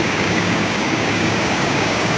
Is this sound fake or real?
fake